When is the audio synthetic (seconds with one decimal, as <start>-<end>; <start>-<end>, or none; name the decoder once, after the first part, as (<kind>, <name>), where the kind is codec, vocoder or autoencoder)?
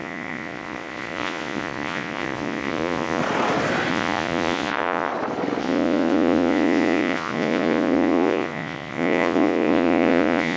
0.0-3.2 (vocoder, Vocos); 3.9-5.1; 5.6-10.6